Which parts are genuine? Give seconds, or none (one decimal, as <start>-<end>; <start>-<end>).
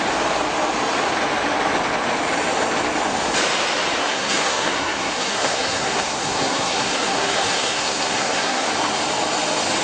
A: 0.0-4.0; 8.7-9.8